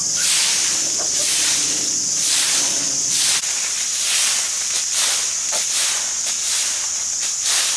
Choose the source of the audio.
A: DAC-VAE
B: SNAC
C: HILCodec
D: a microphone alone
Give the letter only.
D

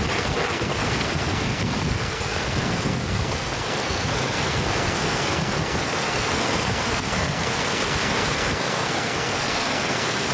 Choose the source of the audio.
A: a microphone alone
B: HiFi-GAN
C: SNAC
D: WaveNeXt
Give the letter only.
C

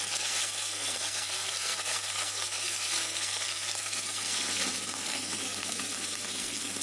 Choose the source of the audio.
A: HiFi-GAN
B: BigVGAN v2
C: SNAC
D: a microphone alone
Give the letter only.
C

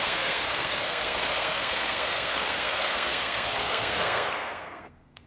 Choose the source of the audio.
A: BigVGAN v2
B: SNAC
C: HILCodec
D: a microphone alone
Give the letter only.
B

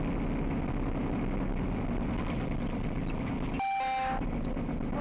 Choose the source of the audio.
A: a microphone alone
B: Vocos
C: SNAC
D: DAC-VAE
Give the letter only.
A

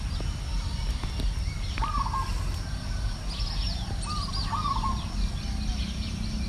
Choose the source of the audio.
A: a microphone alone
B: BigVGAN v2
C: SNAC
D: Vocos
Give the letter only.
A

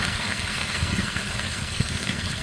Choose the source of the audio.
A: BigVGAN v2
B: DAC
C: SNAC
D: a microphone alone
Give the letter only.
C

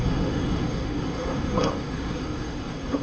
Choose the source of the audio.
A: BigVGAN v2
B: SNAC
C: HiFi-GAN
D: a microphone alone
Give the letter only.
B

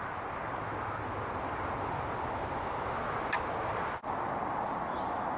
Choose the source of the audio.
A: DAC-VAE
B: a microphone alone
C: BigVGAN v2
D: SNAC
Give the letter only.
B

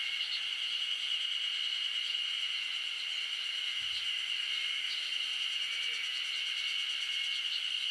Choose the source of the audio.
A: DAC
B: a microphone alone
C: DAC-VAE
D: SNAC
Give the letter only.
B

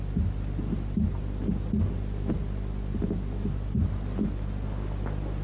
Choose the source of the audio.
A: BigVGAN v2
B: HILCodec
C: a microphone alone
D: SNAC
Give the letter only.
C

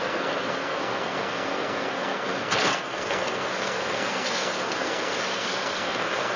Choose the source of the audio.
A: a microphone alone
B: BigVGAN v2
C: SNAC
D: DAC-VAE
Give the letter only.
C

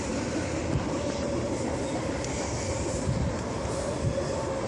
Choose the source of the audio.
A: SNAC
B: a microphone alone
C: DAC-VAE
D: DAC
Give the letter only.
B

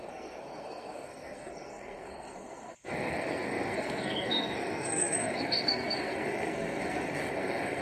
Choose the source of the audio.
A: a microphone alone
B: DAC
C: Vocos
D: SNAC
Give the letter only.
D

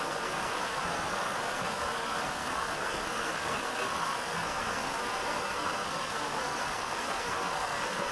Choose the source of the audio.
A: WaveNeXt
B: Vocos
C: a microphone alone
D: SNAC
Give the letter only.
D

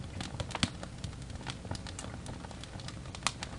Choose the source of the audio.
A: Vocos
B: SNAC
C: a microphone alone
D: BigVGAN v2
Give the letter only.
C